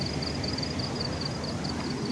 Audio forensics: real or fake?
fake